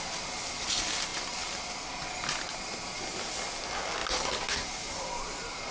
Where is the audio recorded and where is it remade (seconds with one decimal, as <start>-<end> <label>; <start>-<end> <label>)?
0.0-1.1 recorded; 1.1-2.5 remade; 2.5-4.0 recorded; 4.0-5.7 remade